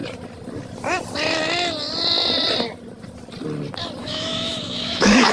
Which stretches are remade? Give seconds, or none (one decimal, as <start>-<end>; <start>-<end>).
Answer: 4.0-5.3